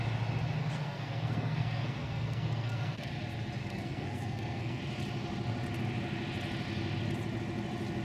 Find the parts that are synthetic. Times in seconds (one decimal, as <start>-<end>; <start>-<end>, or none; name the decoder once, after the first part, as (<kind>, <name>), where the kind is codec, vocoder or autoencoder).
0.6-3.1 (codec, SNAC); 3.6-4.8